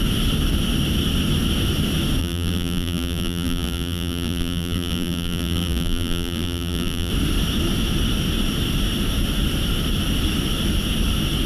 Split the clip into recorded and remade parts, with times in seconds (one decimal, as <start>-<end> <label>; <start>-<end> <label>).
0.0-2.2 recorded; 2.2-7.1 remade; 7.1-11.5 recorded